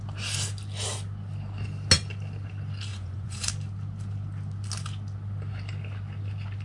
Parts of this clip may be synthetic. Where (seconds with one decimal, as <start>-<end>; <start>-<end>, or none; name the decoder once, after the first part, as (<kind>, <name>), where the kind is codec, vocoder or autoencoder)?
2.9-3.5 (vocoder, Vocos)